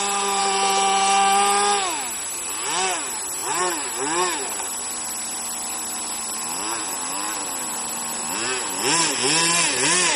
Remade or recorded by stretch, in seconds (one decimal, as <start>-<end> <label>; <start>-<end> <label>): 0.0-10.2 recorded